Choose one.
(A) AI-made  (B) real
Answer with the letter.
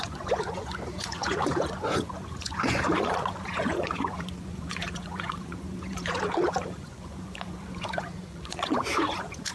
A